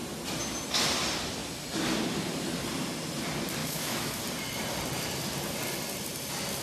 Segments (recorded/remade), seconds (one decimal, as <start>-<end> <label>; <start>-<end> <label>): 0.0-3.6 recorded; 3.6-4.2 remade; 4.2-6.6 recorded